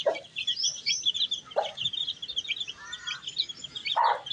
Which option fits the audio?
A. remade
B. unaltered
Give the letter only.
B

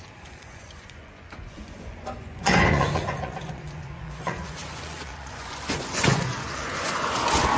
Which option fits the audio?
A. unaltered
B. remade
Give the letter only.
B